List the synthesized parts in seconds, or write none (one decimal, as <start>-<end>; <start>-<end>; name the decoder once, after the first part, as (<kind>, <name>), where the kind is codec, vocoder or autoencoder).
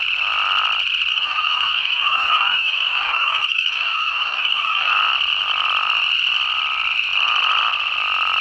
1.1-4.9 (codec, DAC)